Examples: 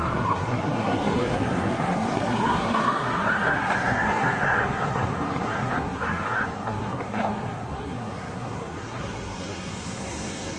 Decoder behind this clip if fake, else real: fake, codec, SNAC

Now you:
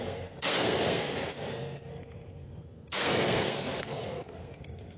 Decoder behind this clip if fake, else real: fake, codec, SNAC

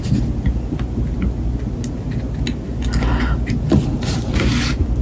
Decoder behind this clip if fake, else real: real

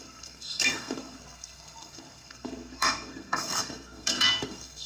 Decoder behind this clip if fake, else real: fake, codec, SNAC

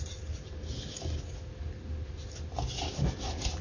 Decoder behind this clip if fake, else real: real